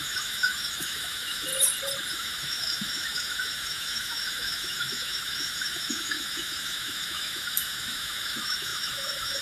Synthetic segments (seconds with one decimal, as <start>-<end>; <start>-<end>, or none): 0.0-1.5; 2.1-9.4